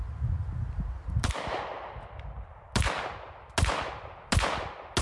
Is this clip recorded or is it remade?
recorded